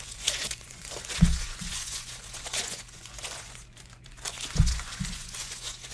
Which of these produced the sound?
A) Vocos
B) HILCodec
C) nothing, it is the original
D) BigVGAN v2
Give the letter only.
A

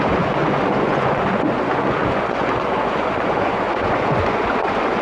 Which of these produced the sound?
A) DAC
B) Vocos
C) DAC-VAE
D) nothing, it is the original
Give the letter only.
B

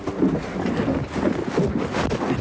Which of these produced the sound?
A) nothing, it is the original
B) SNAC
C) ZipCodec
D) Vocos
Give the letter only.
A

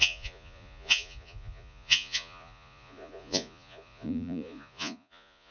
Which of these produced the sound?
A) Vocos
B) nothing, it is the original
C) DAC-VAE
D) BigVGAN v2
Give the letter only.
A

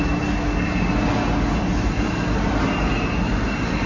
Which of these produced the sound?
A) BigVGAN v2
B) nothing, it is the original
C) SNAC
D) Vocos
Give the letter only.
B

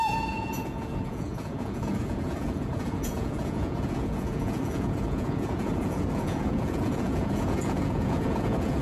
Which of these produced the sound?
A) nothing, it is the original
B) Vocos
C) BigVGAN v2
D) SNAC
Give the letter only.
B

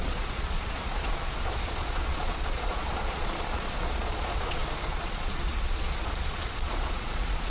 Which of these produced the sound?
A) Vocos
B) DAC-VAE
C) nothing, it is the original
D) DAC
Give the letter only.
A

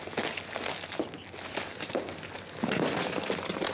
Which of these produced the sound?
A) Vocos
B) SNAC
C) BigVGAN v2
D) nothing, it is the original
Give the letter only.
D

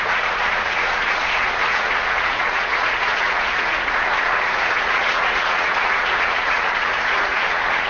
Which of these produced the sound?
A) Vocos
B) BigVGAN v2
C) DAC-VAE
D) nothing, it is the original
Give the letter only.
A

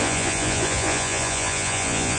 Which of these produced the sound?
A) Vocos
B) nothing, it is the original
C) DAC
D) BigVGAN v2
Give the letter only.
A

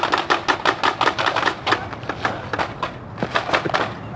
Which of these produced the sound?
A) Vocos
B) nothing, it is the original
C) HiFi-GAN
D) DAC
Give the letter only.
B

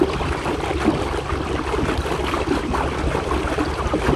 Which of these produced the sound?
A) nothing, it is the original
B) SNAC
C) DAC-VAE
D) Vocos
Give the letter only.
A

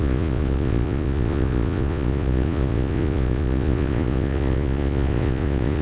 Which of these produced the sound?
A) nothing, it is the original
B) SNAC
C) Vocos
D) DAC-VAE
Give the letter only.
C